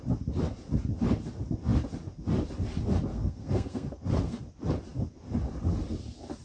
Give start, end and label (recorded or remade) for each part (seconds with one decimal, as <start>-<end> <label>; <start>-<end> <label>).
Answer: 0.0-3.1 recorded; 3.1-4.4 remade; 4.4-6.4 recorded